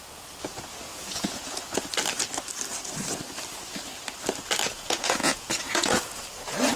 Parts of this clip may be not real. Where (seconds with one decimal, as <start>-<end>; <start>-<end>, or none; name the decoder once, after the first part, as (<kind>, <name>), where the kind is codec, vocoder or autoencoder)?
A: 0.9-1.8 (vocoder, Vocos); 4.7-6.2